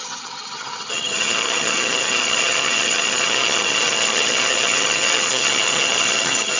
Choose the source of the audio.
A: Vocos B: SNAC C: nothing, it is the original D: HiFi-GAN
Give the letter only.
D